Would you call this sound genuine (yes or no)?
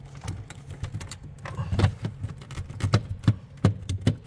yes